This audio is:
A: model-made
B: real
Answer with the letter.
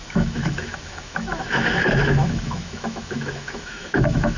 A